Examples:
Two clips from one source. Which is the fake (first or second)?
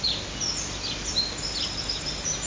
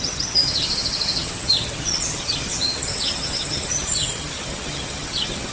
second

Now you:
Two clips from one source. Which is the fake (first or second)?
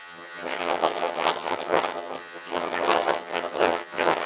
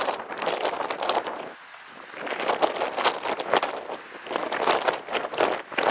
first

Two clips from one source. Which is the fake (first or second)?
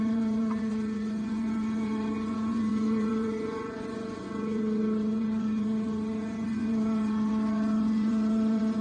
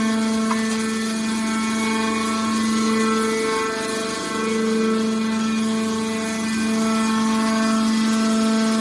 first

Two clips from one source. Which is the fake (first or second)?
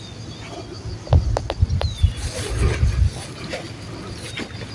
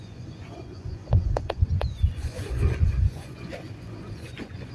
second